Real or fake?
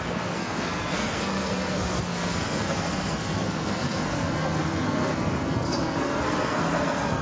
fake